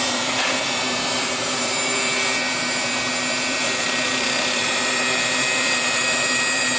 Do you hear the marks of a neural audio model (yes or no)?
yes